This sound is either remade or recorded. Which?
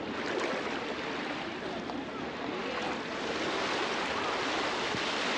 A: recorded